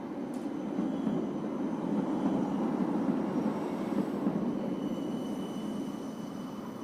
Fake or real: real